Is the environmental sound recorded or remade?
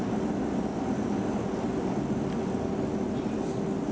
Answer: recorded